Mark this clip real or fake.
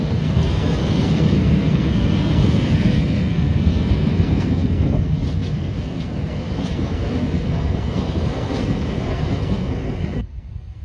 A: fake